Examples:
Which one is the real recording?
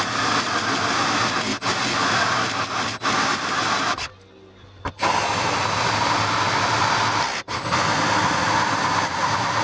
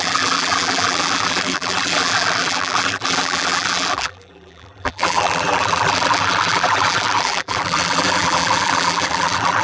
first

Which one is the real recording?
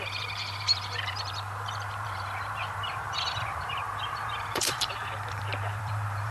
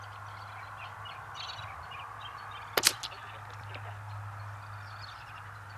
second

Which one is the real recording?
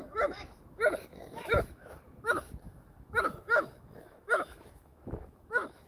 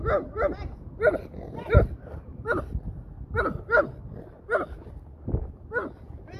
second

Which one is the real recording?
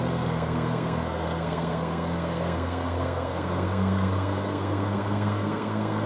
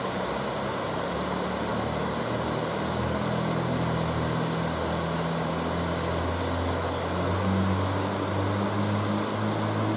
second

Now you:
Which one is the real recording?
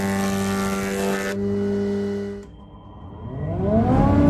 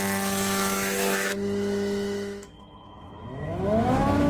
first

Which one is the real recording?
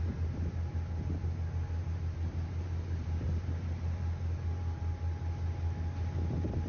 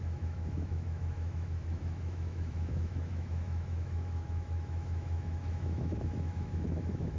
first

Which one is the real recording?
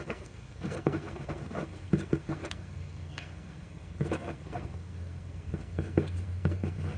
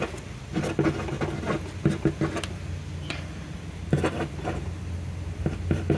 second